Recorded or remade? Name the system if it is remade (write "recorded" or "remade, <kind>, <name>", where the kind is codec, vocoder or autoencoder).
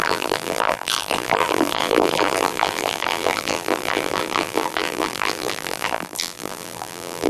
remade, vocoder, BigVGAN v2